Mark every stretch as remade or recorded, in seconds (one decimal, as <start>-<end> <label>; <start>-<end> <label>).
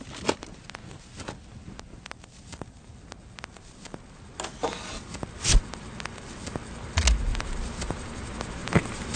0.0-7.3 recorded; 7.3-9.2 remade